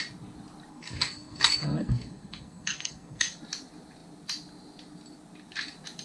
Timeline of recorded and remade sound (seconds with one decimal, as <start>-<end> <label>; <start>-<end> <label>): 0.0-0.7 recorded; 0.7-3.4 remade; 3.4-6.0 recorded